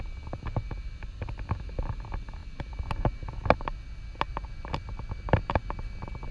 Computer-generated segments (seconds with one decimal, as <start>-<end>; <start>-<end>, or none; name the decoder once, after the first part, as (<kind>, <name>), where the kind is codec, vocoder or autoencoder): none